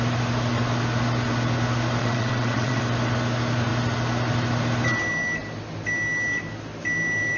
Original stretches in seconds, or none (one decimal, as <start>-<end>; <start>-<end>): 0.0-2.0; 2.8-7.4